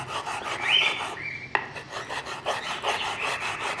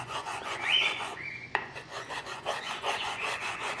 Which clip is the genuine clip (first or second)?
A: first